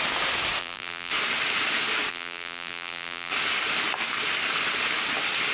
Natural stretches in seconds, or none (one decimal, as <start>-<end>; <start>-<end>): 0.0-0.6; 1.1-2.1; 3.3-5.5